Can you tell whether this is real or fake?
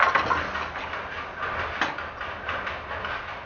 real